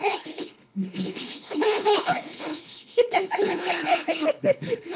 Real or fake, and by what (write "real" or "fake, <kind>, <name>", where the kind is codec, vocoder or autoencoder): fake, codec, HILCodec